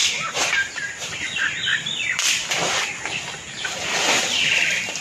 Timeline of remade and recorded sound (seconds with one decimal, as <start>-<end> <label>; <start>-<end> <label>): 0.0-1.7 recorded; 1.7-3.2 remade; 3.2-5.0 recorded